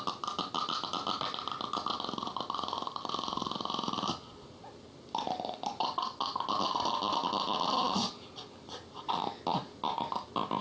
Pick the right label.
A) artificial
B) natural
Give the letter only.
B